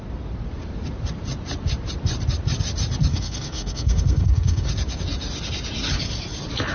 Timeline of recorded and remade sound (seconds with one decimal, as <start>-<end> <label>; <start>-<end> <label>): 0.0-3.1 recorded; 3.1-4.7 remade; 4.7-6.7 recorded